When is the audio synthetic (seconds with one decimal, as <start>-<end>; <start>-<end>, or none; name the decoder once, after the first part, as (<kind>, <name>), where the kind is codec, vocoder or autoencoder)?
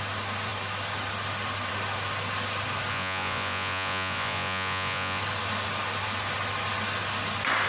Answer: 2.9-5.2 (vocoder, Vocos)